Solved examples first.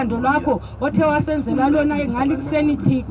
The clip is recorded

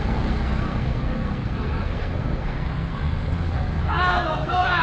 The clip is remade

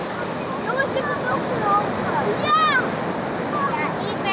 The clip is recorded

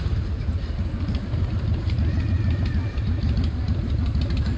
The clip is remade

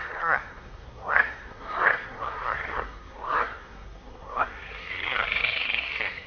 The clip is remade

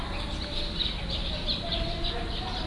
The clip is recorded